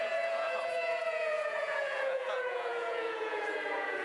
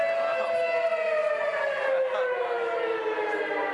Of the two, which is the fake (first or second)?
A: first